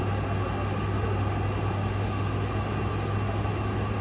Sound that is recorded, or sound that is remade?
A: recorded